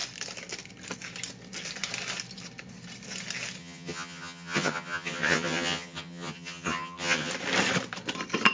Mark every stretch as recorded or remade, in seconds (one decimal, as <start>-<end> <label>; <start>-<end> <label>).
0.0-3.6 recorded; 3.6-7.3 remade; 7.3-8.5 recorded